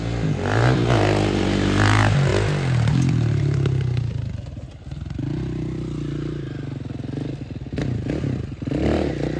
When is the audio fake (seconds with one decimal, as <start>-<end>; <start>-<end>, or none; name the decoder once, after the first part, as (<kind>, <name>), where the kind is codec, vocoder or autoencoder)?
none